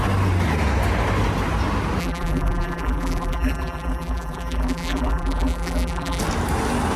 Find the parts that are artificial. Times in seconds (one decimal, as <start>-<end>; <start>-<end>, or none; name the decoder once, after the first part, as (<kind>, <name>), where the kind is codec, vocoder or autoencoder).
2.0-6.2 (vocoder, BigVGAN v2)